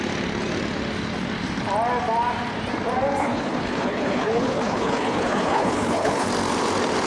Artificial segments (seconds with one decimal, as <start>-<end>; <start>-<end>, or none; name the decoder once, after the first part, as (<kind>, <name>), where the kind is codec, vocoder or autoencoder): 3.2-6.3 (codec, HILCodec)